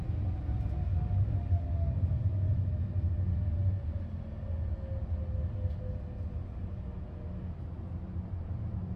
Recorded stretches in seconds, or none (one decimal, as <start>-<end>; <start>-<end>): 0.0-0.9; 2.0-9.0